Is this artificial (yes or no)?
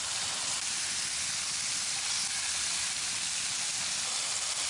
no